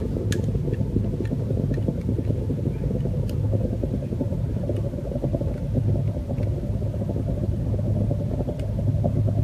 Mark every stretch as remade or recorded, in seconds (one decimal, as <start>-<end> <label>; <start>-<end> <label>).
0.0-9.4 recorded